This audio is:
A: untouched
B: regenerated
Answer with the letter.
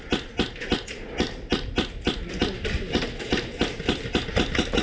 A